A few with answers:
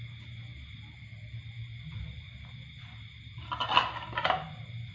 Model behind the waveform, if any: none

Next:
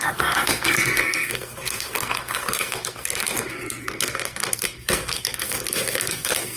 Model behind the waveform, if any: codec, SNAC